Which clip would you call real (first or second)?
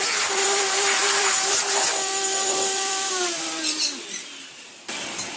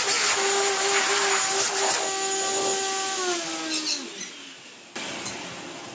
second